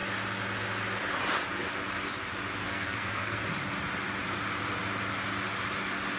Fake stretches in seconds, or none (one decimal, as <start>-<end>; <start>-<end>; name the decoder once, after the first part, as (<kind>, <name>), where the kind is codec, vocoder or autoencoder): 2.6-3.4 (codec, SNAC)